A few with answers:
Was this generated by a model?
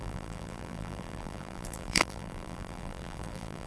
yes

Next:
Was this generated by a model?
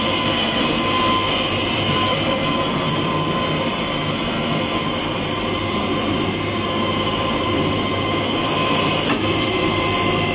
yes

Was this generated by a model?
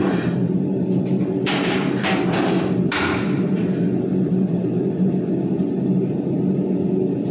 yes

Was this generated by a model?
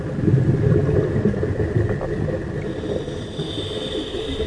no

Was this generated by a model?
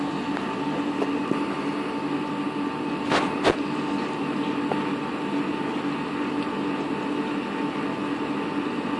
no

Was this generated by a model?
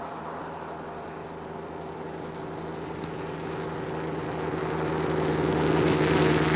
no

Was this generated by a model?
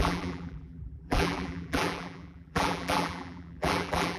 yes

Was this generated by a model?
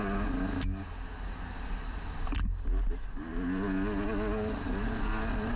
no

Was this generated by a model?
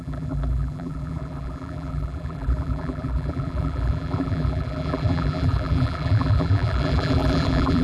yes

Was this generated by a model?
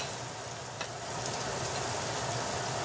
no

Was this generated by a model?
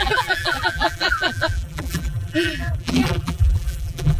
yes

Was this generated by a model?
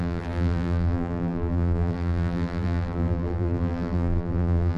yes